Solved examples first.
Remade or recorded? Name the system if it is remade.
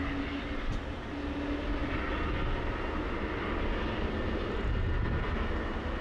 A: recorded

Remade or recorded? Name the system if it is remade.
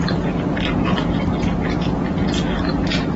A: recorded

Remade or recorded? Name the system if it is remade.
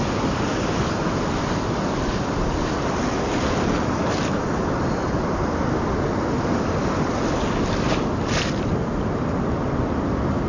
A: recorded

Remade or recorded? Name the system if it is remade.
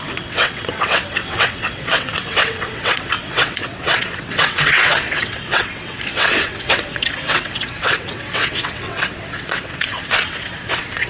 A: remade, vocoder, WaveNeXt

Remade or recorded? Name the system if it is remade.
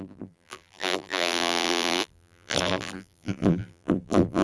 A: remade, vocoder, BigVGAN v2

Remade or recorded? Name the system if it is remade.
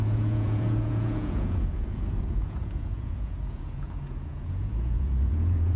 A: remade, vocoder, Vocos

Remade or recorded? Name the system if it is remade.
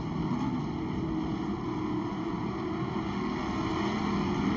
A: recorded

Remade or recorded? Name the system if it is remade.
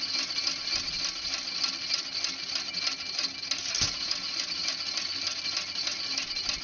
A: recorded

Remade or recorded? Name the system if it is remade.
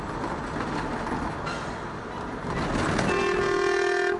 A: recorded